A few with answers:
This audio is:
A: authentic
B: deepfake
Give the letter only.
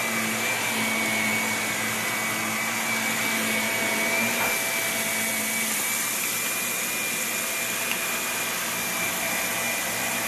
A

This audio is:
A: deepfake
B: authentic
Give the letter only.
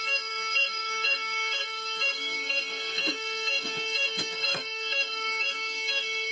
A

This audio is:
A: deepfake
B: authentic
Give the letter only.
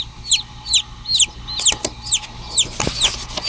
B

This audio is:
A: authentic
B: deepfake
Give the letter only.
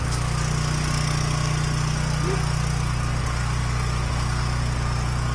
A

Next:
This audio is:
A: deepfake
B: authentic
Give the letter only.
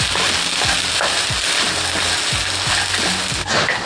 B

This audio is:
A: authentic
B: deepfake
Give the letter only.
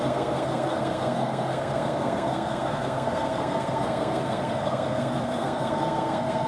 B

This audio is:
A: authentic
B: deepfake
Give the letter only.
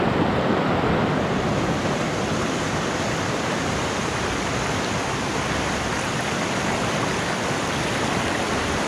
A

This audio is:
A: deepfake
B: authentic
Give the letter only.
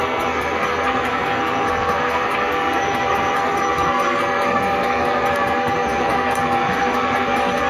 A